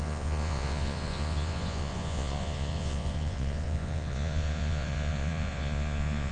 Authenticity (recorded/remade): remade